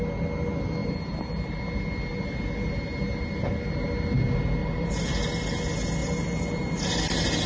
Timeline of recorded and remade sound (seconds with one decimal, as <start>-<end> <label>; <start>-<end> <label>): 0.0-0.8 recorded; 0.8-1.6 remade; 1.6-2.1 recorded; 2.1-3.5 remade; 3.5-4.6 recorded; 4.6-5.3 remade; 5.3-6.0 recorded; 6.0-7.0 remade; 7.0-7.5 recorded

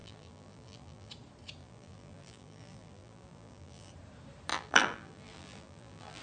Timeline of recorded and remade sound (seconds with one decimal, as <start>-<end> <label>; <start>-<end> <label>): 0.0-1.1 remade; 1.1-1.6 recorded; 1.6-3.9 remade; 3.9-4.5 recorded; 4.5-6.2 remade

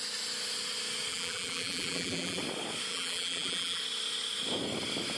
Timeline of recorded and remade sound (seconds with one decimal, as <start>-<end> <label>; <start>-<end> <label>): 0.0-1.1 recorded; 1.1-2.4 remade; 2.4-2.9 recorded; 2.9-3.8 remade; 3.8-5.2 recorded

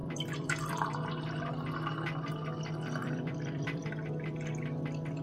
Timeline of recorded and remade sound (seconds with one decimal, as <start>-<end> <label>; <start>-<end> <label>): 0.0-1.1 remade; 1.1-3.0 recorded; 3.0-3.8 remade; 3.8-5.2 recorded

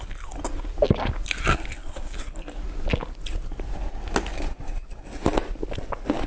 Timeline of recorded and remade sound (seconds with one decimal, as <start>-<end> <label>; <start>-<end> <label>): 0.0-6.3 recorded

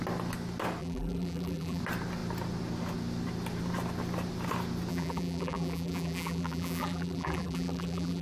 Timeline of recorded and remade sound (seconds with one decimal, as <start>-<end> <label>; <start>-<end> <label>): 0.0-0.8 recorded; 0.8-1.8 remade; 1.8-4.9 recorded; 4.9-8.2 remade